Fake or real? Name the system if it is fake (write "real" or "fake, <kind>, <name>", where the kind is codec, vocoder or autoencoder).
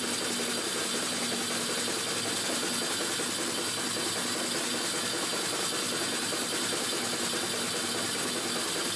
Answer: real